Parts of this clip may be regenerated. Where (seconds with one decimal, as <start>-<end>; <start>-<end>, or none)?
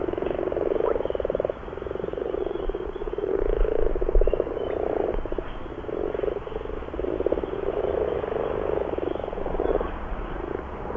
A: 2.1-3.4; 9.3-10.5